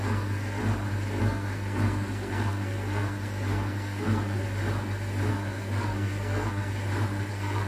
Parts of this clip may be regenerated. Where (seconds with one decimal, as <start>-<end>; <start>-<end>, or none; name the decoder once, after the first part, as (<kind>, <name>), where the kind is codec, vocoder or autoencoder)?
0.0-0.6 (codec, SNAC); 1.2-4.4; 5.3-6.7; 7.3-7.7